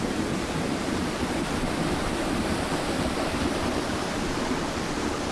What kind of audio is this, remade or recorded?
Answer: remade